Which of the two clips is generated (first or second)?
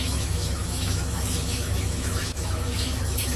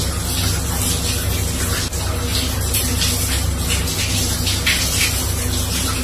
first